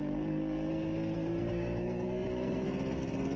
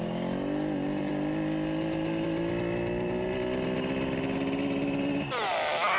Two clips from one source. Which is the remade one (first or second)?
first